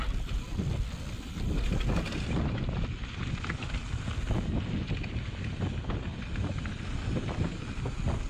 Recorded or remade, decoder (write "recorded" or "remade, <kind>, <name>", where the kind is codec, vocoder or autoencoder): recorded